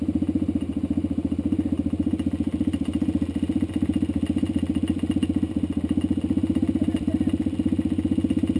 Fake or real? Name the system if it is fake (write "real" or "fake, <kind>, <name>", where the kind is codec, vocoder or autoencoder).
real